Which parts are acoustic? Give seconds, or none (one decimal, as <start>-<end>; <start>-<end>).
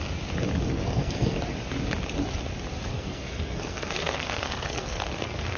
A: 0.0-0.7; 1.4-2.9